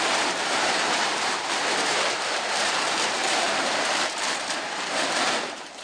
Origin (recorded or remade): remade